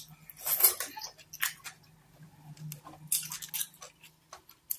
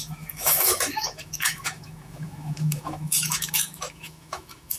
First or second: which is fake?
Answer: second